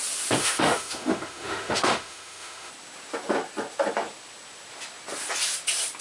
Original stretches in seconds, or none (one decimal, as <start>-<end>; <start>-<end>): 0.0-0.4; 2.7-6.0